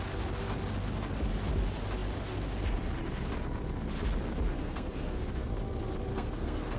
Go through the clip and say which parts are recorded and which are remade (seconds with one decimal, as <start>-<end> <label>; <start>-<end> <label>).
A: 0.0-4.5 recorded; 4.5-5.5 remade; 5.5-6.1 recorded; 6.1-6.8 remade